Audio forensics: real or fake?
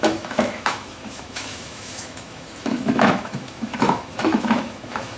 fake